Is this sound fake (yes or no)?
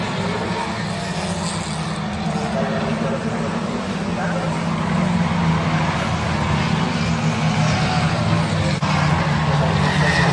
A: no